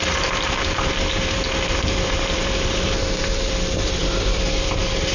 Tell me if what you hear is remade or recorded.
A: remade